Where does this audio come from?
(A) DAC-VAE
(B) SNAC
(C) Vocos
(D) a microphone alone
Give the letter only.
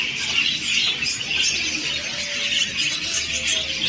D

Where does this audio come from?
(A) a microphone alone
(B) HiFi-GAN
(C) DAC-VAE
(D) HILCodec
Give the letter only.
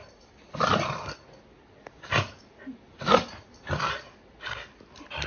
A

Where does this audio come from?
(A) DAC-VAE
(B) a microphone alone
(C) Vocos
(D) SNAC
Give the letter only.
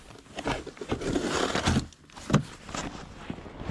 B